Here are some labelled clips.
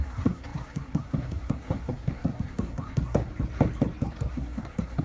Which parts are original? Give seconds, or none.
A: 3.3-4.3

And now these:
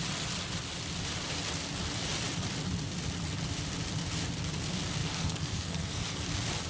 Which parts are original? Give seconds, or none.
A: 0.0-5.0; 6.2-6.7